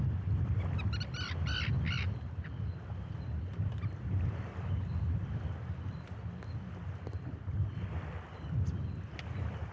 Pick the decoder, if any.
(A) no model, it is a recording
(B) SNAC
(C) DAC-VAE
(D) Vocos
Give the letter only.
A